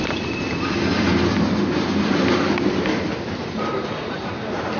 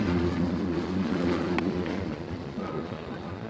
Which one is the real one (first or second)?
first